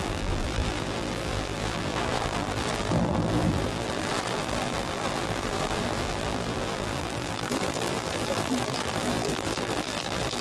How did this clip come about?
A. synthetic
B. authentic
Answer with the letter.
A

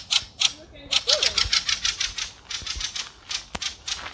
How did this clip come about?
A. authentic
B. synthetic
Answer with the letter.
A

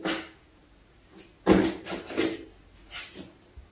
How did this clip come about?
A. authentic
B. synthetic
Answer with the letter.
A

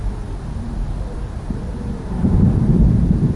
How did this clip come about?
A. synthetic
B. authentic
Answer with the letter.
A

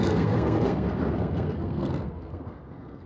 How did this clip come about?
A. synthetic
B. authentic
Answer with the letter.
A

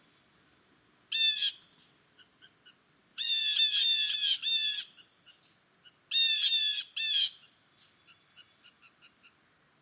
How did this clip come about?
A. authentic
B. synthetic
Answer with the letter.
A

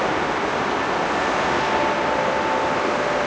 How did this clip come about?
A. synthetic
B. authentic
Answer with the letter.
B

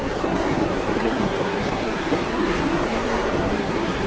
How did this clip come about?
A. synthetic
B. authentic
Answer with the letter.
A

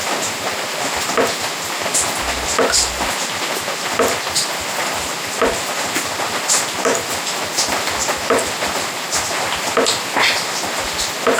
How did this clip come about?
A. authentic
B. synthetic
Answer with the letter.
A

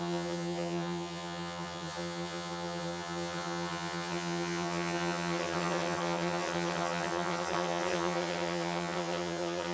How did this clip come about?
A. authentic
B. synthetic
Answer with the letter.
B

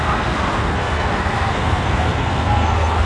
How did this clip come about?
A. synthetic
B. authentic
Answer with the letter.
A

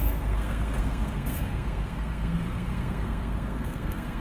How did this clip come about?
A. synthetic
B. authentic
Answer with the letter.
A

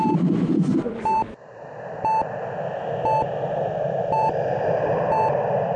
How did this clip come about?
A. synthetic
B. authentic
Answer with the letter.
A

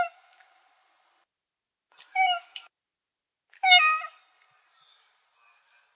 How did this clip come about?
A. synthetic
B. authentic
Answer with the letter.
B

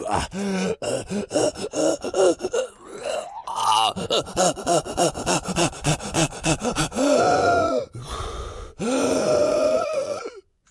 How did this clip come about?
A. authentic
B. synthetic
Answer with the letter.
B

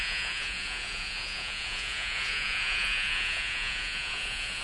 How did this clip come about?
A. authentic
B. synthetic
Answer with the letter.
B